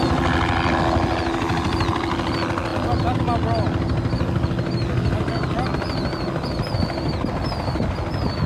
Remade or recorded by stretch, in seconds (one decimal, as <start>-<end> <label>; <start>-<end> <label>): 0.0-8.5 recorded